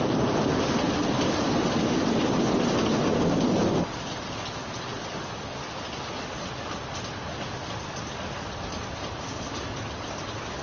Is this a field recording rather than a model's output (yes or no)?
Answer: yes